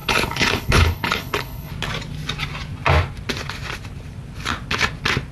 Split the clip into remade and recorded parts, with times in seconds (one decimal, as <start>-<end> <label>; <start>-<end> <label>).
0.0-1.7 remade; 1.7-5.3 recorded